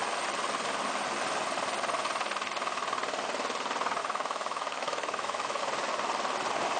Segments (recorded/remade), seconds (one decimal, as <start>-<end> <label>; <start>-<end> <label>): 0.0-4.0 recorded; 4.0-5.6 remade; 5.6-6.8 recorded